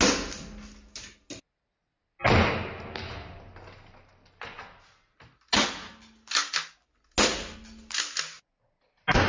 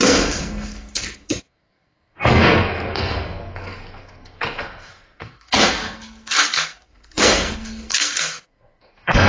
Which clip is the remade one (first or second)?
second